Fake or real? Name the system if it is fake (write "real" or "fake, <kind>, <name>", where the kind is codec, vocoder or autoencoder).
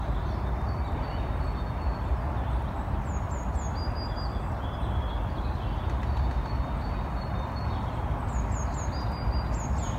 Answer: real